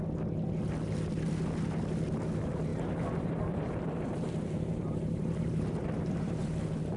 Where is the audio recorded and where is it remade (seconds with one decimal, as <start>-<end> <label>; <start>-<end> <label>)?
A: 0.0-2.7 recorded; 2.7-6.6 remade; 6.6-7.0 recorded